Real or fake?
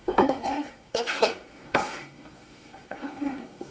fake